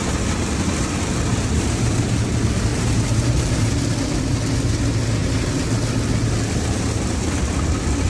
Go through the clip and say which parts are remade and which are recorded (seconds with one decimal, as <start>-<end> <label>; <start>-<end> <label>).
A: 0.0-1.3 recorded; 1.3-2.2 remade; 2.2-2.7 recorded; 2.7-3.7 remade; 3.7-8.1 recorded